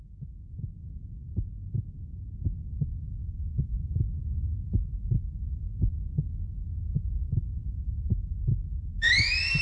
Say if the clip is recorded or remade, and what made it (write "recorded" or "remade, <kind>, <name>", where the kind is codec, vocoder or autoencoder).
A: recorded